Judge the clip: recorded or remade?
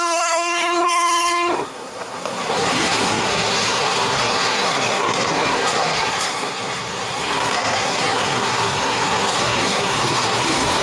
remade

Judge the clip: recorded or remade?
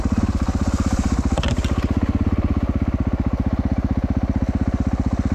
recorded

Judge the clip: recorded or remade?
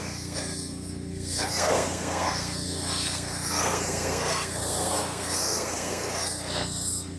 remade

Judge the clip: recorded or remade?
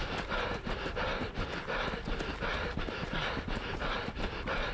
recorded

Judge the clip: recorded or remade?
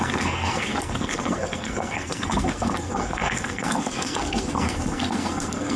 remade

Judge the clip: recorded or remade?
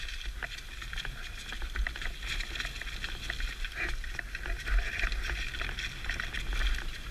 recorded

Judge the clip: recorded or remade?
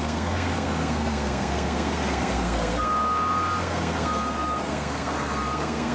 remade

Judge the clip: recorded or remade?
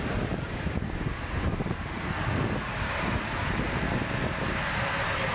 recorded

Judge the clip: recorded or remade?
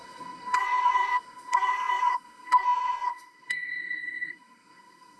remade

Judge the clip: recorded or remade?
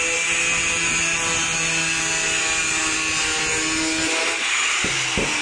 recorded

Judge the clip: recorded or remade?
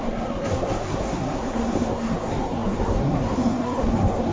remade